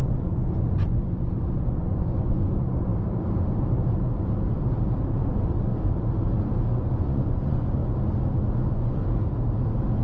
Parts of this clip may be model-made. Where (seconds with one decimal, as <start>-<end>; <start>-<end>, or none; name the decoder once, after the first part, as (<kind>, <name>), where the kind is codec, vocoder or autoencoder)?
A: 0.0-2.9 (vocoder, Vocos); 5.2-5.7; 6.7-7.8; 8.5-9.0